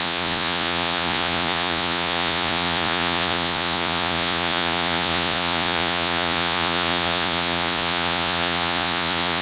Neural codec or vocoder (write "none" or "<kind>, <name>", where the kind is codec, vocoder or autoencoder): vocoder, Vocos